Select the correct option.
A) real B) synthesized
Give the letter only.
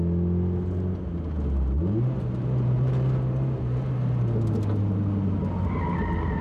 A